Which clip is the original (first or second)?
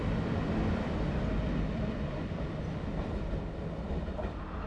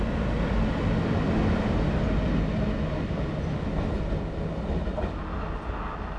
second